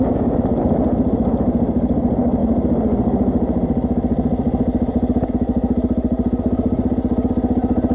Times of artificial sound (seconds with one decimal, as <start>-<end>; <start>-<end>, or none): none